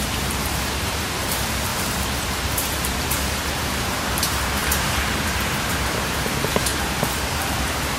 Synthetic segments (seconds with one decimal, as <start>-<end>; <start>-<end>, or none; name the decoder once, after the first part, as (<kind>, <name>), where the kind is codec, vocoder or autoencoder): 0.0-1.7 (vocoder, BigVGAN v2); 2.2-8.0